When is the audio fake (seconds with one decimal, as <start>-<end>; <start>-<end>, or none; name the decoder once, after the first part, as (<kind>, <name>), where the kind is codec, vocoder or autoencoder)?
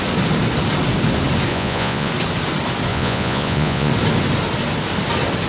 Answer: 1.5-2.1 (vocoder, Vocos); 2.9-3.9